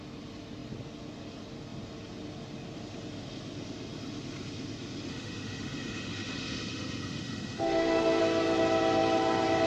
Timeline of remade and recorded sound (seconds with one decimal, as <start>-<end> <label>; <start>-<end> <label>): 0.0-5.1 recorded; 5.1-8.2 remade; 8.2-9.7 recorded